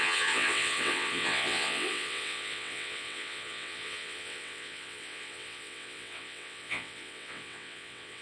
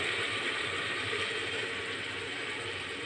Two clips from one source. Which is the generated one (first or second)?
first